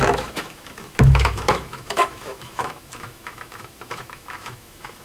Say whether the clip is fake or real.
fake